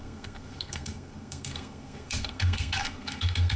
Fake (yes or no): yes